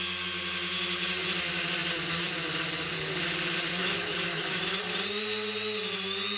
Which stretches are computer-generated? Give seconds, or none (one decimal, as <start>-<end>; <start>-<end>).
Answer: 3.8-4.6